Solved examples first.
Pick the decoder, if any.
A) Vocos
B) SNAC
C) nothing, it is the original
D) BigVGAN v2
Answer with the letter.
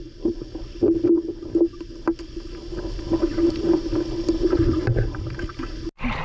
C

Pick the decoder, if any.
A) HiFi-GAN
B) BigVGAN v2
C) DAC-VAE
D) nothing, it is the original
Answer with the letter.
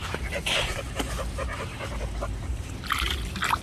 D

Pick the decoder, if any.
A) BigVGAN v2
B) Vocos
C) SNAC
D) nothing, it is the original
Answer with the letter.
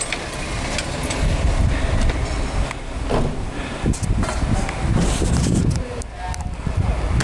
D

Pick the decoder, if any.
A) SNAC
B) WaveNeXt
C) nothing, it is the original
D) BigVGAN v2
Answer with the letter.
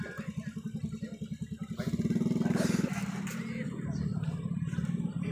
C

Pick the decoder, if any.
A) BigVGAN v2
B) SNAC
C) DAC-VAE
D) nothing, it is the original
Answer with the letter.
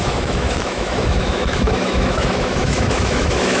C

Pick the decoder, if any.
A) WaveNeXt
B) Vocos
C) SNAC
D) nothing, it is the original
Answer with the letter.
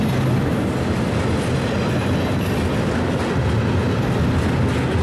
D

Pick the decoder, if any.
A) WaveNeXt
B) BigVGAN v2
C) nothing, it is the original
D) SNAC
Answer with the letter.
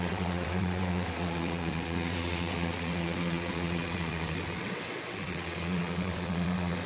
A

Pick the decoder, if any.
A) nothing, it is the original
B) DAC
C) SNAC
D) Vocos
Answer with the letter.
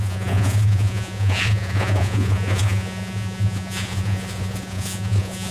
D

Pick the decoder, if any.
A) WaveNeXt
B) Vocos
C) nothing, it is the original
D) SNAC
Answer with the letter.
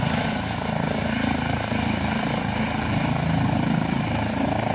C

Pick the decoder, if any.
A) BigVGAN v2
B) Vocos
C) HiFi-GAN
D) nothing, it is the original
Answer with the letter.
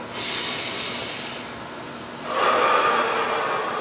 D